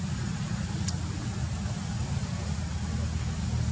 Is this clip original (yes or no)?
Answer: yes